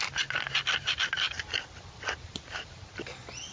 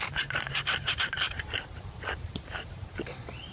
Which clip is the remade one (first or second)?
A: second